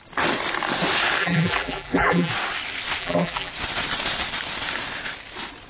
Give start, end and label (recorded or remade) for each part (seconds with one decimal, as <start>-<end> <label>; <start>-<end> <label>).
0.0-1.2 recorded; 1.2-2.3 remade; 2.3-3.0 recorded; 3.0-3.5 remade; 3.5-5.7 recorded